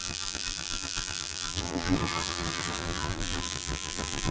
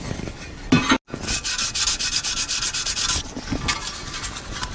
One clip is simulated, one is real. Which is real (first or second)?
second